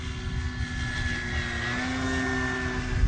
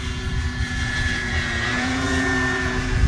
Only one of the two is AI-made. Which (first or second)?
second